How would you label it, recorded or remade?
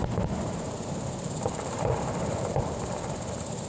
remade